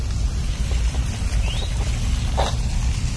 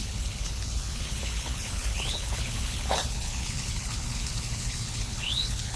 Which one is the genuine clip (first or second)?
first